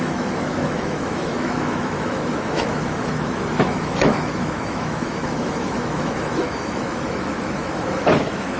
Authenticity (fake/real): fake